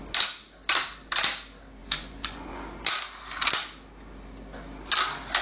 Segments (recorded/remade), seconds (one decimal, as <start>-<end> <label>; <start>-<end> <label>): 0.0-1.8 recorded; 1.8-2.6 remade; 2.6-5.4 recorded